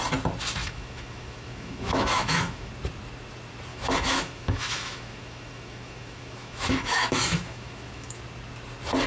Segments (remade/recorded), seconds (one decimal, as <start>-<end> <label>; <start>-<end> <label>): 0.0-0.6 recorded; 0.6-2.7 remade; 2.7-3.7 recorded; 3.7-8.2 remade; 8.2-9.1 recorded